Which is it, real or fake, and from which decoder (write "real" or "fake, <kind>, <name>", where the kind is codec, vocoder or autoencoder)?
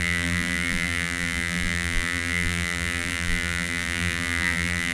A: fake, vocoder, BigVGAN v2